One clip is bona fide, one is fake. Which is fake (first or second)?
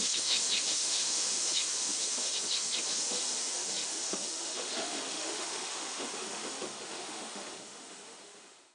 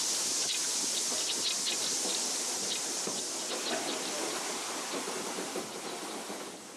first